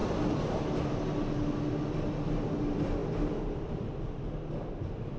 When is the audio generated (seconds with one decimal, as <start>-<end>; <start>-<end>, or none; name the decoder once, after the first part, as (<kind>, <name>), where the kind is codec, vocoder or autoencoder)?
3.0-4.2 (vocoder, BigVGAN v2)

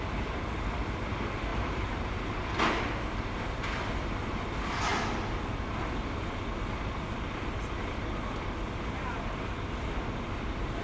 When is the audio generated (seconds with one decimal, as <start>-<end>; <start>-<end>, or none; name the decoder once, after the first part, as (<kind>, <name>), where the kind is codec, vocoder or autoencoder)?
1.5-2.9 (vocoder, BigVGAN v2)

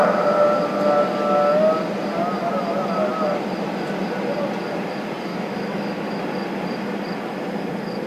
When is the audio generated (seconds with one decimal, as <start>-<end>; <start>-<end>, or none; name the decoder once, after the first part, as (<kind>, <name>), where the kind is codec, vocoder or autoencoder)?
5.3-6.2 (autoencoder, DAC-VAE)

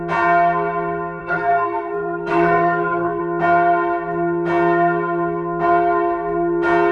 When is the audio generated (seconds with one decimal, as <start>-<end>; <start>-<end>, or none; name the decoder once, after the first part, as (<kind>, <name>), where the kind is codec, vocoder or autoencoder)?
1.2-3.2 (codec, SNAC)

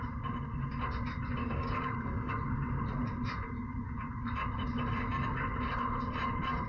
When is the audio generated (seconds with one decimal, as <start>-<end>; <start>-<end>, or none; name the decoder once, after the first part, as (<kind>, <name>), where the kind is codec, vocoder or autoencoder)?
1.4-2.3 (codec, DAC)

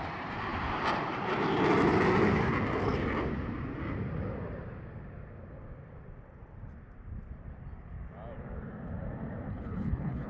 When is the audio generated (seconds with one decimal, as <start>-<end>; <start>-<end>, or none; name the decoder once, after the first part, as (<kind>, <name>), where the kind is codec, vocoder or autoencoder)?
9.5-10.3 (codec, HILCodec)

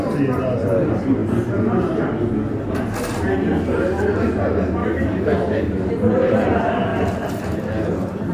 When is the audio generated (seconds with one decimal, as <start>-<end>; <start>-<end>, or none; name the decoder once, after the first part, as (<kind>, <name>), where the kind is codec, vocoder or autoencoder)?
4.8-5.9 (codec, DAC)